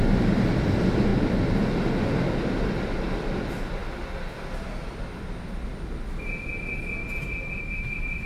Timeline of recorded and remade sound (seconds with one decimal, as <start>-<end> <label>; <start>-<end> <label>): 0.0-7.0 recorded; 7.0-8.3 remade